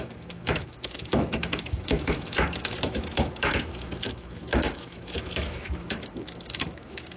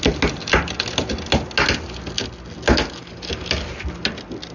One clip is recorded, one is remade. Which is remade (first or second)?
first